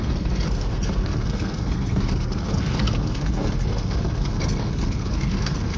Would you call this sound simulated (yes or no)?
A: yes